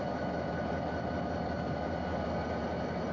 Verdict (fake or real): real